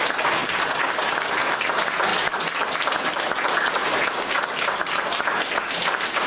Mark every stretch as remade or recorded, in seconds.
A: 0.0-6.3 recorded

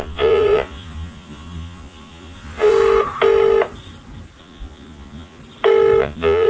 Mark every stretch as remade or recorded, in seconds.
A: 0.0-2.7 remade; 2.7-4.4 recorded; 4.4-5.4 remade; 5.4-6.0 recorded; 6.0-6.5 remade

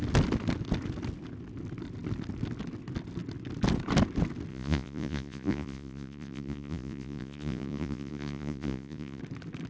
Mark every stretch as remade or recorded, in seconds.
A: 0.0-4.5 recorded; 4.5-9.2 remade; 9.2-9.7 recorded

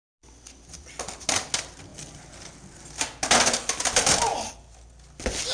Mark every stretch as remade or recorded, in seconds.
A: 0.0-5.5 recorded

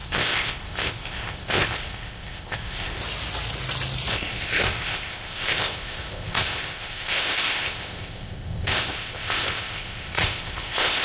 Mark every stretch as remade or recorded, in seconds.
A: 0.0-3.0 remade; 3.0-4.1 recorded; 4.1-11.0 remade